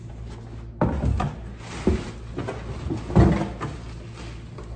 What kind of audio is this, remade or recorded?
recorded